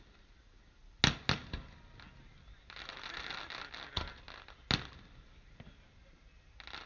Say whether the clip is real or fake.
real